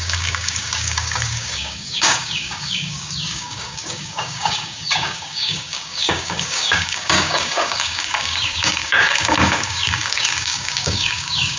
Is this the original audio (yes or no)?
no